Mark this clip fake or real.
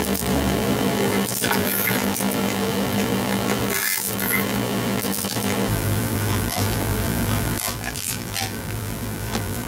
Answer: fake